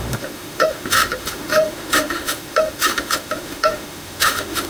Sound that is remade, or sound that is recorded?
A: remade